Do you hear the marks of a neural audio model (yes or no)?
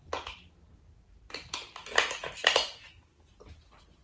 no